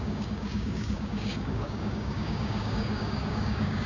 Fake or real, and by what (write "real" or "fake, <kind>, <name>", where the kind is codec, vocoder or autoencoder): fake, codec, DAC